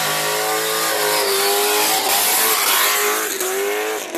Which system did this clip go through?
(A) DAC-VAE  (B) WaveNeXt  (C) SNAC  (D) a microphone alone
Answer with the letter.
D